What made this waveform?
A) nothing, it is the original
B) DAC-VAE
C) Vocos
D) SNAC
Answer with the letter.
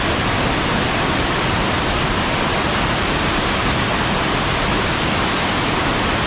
A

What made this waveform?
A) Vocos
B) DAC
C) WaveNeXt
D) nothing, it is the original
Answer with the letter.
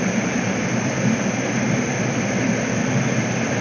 D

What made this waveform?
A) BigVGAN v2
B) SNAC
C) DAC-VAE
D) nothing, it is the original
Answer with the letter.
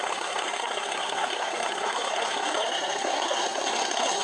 B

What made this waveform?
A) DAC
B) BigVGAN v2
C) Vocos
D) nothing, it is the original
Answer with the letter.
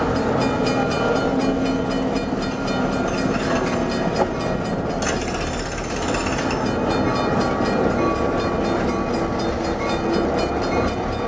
D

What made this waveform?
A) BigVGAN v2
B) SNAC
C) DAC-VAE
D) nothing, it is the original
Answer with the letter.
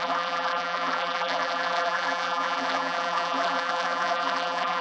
A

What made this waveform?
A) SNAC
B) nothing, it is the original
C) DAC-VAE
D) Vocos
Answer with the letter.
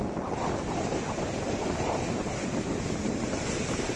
B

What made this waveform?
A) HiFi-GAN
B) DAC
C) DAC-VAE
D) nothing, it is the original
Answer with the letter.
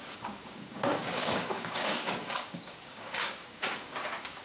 B